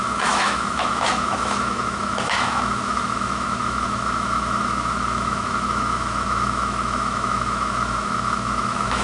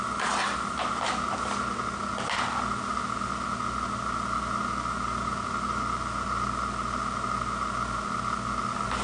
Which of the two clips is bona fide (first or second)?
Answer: second